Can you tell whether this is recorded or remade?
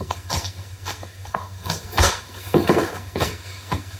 remade